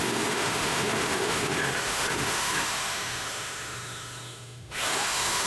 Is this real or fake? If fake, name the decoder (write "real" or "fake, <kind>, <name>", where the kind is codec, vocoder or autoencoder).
fake, autoencoder, DAC-VAE